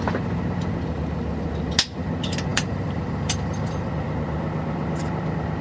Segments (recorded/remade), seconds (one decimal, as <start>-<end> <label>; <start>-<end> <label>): 0.0-2.5 recorded; 2.5-3.9 remade; 3.9-5.6 recorded